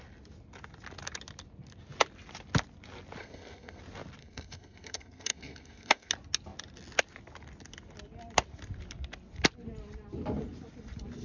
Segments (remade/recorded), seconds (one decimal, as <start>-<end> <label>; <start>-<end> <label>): 0.0-3.2 recorded; 3.2-3.8 remade; 3.8-4.2 recorded; 4.2-6.1 remade; 6.1-11.2 recorded